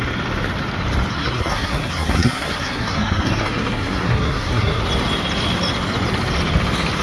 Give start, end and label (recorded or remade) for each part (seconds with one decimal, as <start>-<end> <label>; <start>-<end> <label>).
0.0-1.1 recorded; 1.1-4.8 remade; 4.8-7.0 recorded